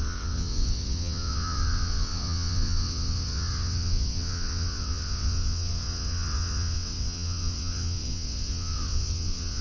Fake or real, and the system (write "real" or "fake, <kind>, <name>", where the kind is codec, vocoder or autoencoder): fake, vocoder, WaveNeXt